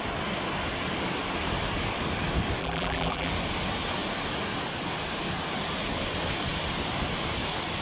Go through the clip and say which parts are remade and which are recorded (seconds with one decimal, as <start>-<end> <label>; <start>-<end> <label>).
0.0-2.6 recorded; 2.6-3.3 remade; 3.3-7.8 recorded